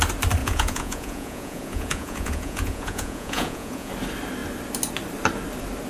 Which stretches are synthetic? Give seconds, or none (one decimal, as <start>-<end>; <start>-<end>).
0.4-3.9